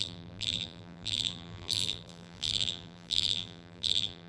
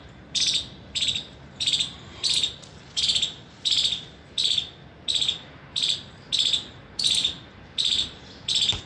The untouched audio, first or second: second